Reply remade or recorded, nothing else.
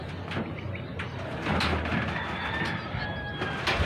recorded